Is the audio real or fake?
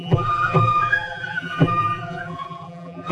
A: fake